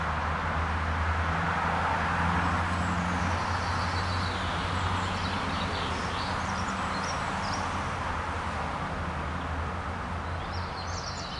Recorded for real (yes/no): yes